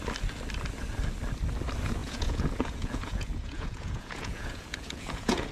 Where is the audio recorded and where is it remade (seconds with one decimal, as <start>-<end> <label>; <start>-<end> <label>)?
0.0-2.0 recorded; 2.0-5.5 remade